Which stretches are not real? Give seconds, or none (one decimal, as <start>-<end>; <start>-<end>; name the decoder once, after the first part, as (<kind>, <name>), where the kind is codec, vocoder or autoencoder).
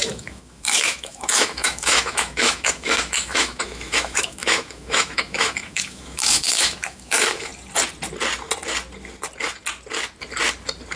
0.0-7.5 (autoencoder, DAC-VAE)